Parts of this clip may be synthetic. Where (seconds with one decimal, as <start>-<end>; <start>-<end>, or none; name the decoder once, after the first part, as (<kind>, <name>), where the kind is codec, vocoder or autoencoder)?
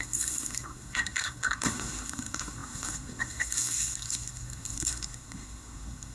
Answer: 0.0-6.1 (codec, SNAC)